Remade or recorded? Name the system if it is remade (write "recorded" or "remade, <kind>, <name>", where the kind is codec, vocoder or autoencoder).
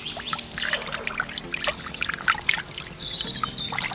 remade, vocoder, BigVGAN v2